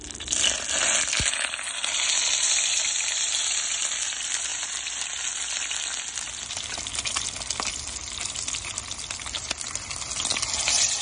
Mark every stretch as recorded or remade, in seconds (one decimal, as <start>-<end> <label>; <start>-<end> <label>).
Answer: 0.0-11.0 recorded